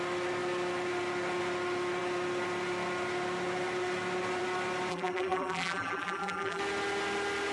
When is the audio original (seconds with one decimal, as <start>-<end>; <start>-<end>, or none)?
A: 0.0-4.9; 6.6-7.5